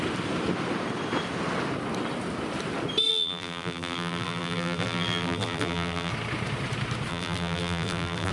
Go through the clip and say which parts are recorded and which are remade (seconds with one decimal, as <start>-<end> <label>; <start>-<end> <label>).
0.0-3.1 recorded; 3.1-6.1 remade; 6.1-7.1 recorded; 7.1-8.3 remade